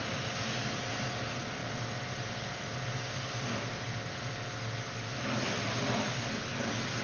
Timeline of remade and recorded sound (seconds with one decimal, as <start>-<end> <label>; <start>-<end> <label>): 0.0-7.0 recorded